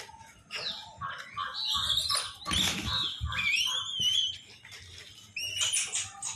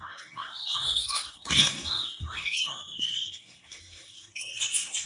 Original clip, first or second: first